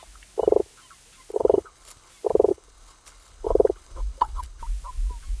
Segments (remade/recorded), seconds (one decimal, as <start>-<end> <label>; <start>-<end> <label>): 0.0-1.3 recorded; 1.3-2.1 remade; 2.1-2.5 recorded; 2.5-4.6 remade; 4.6-5.4 recorded